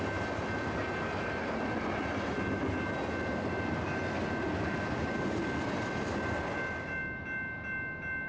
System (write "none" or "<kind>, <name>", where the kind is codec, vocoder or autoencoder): none